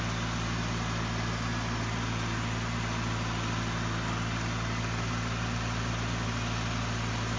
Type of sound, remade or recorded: recorded